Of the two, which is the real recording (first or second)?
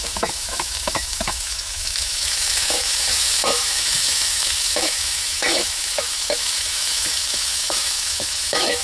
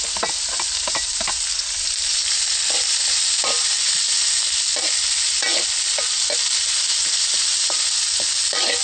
second